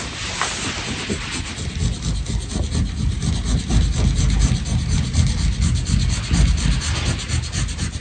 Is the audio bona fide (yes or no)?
yes